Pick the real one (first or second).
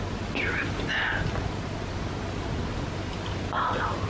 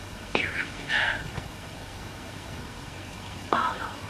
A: first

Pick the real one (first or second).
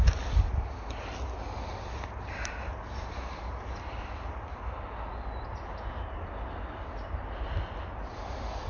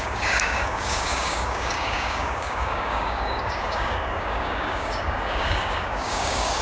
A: first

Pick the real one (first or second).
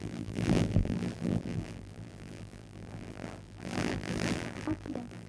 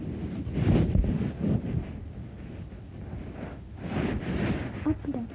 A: second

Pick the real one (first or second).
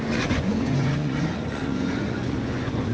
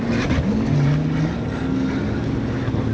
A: second